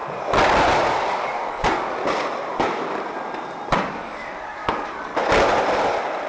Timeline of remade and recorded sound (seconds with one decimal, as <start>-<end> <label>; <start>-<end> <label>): 0.0-0.9 recorded; 0.9-2.0 remade; 2.0-3.7 recorded; 3.7-5.1 remade; 5.1-6.3 recorded